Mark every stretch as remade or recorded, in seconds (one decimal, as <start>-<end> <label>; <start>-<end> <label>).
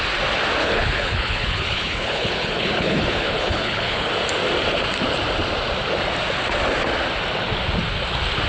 0.0-0.6 recorded; 0.6-4.1 remade; 4.1-8.5 recorded